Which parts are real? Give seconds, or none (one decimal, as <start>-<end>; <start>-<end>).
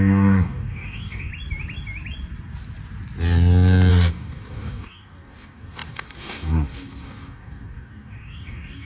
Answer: 1.3-3.9